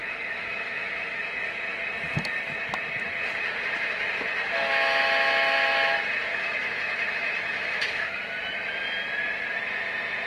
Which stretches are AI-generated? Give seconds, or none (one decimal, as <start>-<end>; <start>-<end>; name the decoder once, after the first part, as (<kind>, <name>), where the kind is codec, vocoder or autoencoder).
0.0-1.2 (autoencoder, DAC-VAE); 6.3-8.2

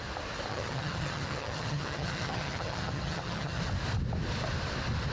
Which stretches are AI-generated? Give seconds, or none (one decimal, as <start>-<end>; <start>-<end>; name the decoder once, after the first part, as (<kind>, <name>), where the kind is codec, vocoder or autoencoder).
0.5-3.6 (vocoder, HiFi-GAN)

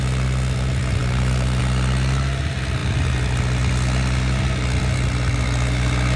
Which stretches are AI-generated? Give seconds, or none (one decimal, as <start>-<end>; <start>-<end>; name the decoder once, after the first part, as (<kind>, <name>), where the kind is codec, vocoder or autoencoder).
none